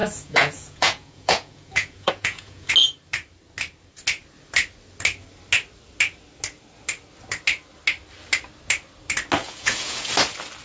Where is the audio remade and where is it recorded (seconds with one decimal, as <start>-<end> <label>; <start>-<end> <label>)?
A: 0.0-2.7 remade; 2.7-9.4 recorded; 9.4-10.1 remade; 10.1-10.6 recorded